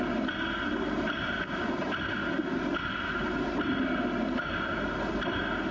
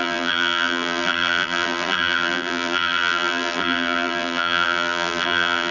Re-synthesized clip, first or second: second